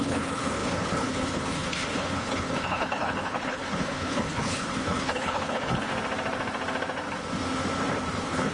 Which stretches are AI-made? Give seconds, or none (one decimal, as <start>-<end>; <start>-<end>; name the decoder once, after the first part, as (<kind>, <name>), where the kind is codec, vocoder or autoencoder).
0.0-5.9 (codec, HILCodec); 8.1-8.5

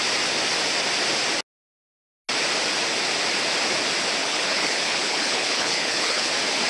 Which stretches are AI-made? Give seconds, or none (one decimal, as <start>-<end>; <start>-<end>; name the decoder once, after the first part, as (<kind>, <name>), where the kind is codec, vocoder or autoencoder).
4.2-6.3 (codec, HILCodec)

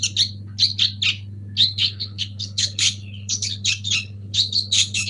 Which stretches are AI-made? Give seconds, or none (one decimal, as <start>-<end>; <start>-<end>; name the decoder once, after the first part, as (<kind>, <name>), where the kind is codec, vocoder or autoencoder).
1.6-5.1 (codec, HILCodec)